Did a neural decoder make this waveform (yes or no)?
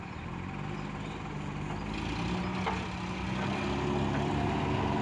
no